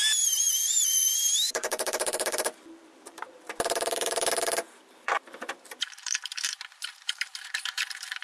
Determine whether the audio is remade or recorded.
remade